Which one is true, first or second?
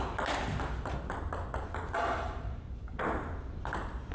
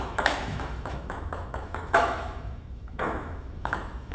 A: first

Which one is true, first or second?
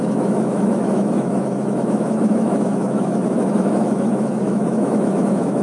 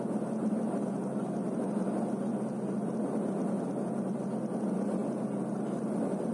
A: second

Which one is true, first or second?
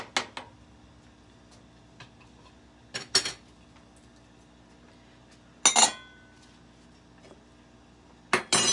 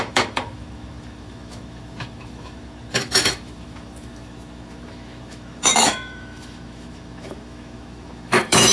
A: first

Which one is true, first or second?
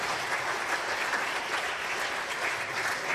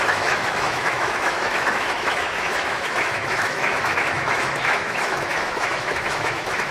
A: first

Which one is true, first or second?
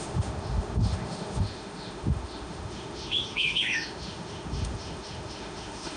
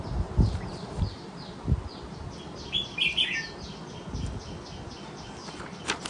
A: second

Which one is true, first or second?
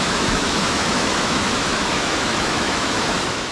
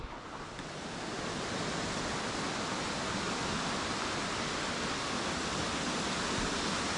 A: second